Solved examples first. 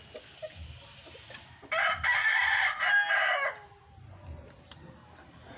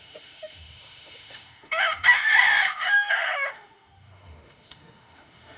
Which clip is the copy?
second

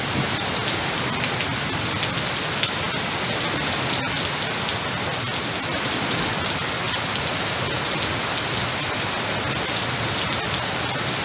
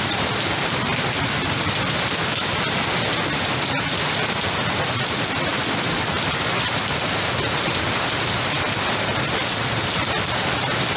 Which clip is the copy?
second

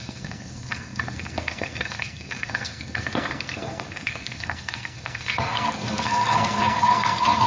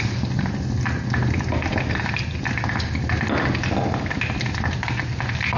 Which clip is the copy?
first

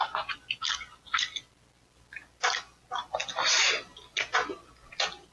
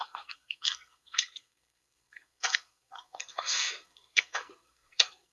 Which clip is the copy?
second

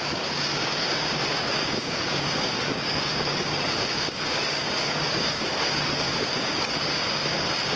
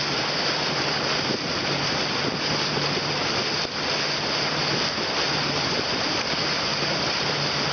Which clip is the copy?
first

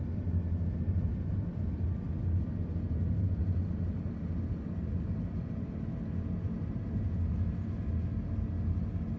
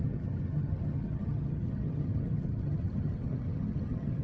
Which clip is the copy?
second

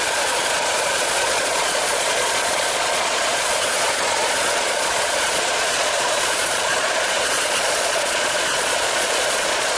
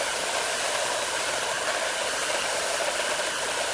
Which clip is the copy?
first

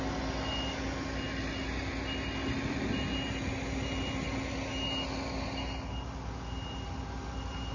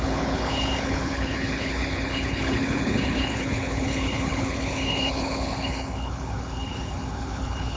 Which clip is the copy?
second